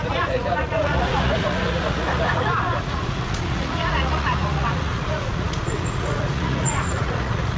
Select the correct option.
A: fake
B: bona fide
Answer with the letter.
A